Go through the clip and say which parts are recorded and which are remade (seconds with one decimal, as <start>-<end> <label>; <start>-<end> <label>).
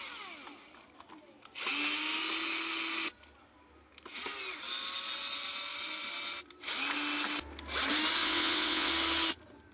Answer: 0.0-8.2 recorded; 8.2-8.9 remade; 8.9-9.7 recorded